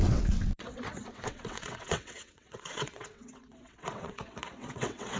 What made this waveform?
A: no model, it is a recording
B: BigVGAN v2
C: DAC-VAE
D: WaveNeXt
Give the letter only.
D